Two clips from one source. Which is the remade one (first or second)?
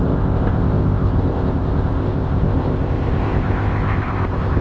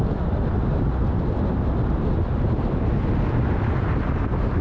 first